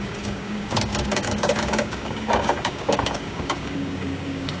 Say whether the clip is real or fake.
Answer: fake